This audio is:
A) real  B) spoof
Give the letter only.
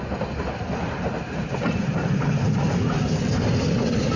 A